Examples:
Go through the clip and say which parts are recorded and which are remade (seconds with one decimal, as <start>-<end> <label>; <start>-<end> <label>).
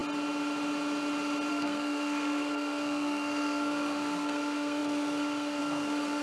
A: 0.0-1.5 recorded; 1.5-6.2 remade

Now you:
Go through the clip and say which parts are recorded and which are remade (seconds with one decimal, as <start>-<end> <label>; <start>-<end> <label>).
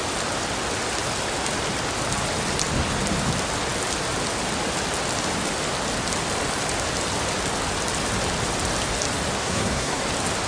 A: 0.0-9.4 recorded; 9.4-10.0 remade; 10.0-10.5 recorded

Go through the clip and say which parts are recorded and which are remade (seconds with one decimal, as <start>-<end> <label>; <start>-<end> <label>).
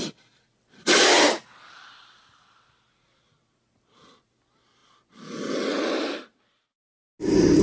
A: 0.0-7.6 recorded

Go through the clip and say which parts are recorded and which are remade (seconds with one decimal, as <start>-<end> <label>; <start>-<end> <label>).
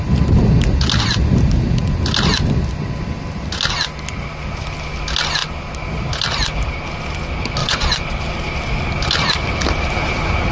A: 0.0-7.6 recorded; 7.6-8.2 remade; 8.2-10.5 recorded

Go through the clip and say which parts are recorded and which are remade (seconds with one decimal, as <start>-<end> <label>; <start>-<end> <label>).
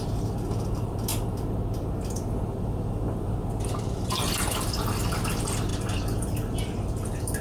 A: 0.0-1.1 remade; 1.1-3.8 recorded; 3.8-7.4 remade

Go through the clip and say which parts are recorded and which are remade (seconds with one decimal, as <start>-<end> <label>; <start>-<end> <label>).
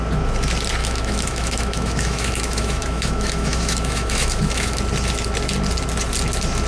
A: 0.0-0.8 recorded; 0.8-4.8 remade; 4.8-6.7 recorded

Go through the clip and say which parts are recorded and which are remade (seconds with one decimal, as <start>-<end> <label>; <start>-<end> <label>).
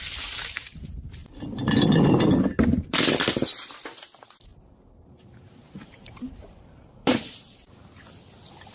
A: 0.0-4.5 recorded; 4.5-7.4 remade; 7.4-8.7 recorded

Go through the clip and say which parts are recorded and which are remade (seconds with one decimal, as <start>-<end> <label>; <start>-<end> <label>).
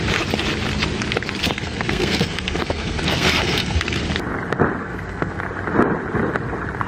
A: 0.0-1.4 recorded; 1.4-4.0 remade; 4.0-4.8 recorded; 4.8-5.4 remade; 5.4-6.9 recorded